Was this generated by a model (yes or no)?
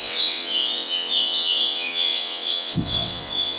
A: yes